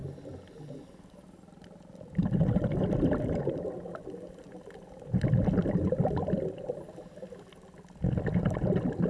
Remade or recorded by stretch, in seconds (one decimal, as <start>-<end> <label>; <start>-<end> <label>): 0.0-9.1 recorded